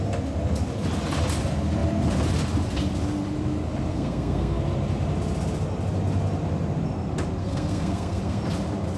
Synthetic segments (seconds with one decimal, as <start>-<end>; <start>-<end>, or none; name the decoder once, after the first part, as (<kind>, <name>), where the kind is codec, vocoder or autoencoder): 3.9-4.6 (codec, SNAC); 7.4-8.4